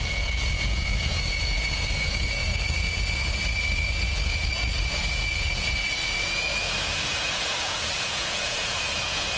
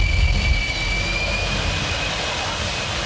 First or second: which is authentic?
second